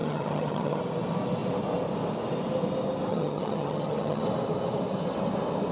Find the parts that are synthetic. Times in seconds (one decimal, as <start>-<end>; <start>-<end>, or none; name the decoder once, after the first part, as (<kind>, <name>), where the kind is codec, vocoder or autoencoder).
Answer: 0.0-0.8 (vocoder, HiFi-GAN); 3.1-4.2